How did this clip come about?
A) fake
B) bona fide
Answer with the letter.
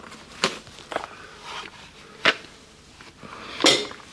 B